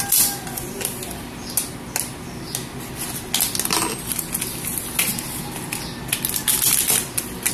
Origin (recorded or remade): recorded